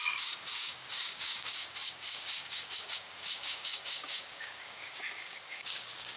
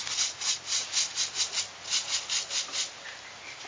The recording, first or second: second